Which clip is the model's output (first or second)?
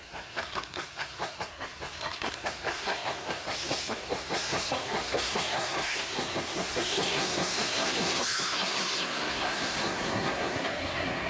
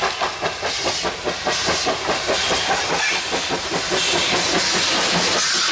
first